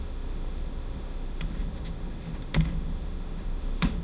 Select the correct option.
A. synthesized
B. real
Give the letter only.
A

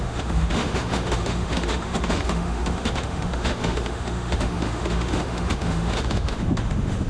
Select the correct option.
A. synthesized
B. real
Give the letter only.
A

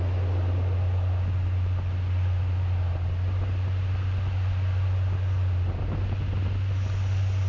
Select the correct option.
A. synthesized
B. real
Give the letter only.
B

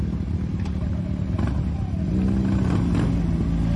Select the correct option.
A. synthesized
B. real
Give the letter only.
B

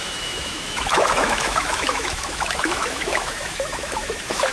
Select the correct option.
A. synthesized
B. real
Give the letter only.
A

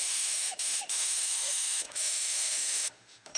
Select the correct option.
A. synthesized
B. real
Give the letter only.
A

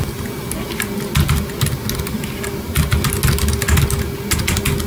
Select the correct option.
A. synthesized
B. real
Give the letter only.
B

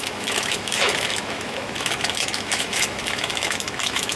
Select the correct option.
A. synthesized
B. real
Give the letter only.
A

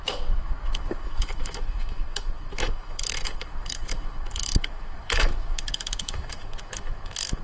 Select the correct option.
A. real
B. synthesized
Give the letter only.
B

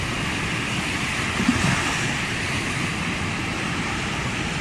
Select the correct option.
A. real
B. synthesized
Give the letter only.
A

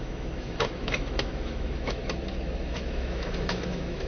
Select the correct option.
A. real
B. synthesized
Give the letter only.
B